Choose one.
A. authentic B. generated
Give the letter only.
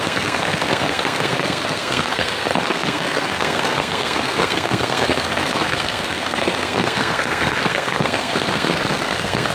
B